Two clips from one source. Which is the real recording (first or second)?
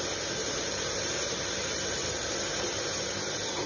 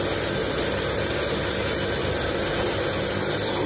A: second